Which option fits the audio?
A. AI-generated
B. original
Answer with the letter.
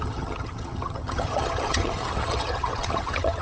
A